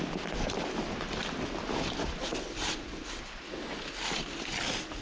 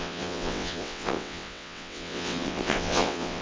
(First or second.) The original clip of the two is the first